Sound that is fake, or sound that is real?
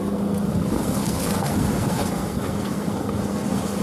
fake